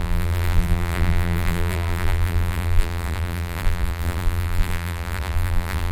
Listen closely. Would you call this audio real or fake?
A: fake